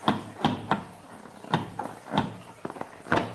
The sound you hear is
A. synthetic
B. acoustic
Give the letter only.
B